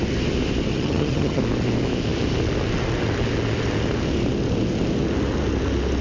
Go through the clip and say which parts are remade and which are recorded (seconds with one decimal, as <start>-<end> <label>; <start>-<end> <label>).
0.0-0.7 recorded; 0.7-1.4 remade; 1.4-6.0 recorded